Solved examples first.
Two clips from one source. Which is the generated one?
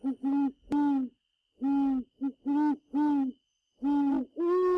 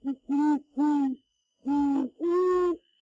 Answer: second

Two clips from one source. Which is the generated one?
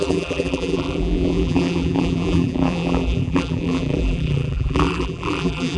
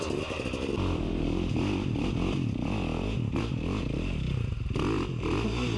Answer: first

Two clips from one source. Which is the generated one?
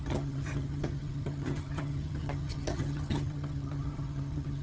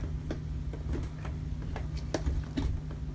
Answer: first